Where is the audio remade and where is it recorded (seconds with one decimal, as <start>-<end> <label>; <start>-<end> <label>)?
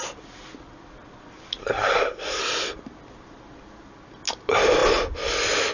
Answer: 0.0-1.6 recorded; 1.6-2.4 remade; 2.4-5.7 recorded